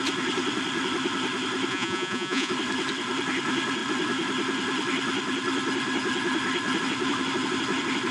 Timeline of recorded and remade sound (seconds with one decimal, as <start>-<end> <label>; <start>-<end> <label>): 0.0-1.7 recorded; 1.7-2.5 remade; 2.5-8.1 recorded